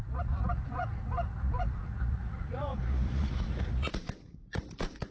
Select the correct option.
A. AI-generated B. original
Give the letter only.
A